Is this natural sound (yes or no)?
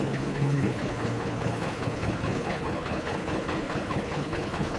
no